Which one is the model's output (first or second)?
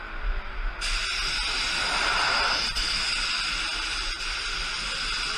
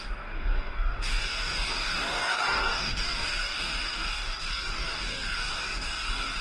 second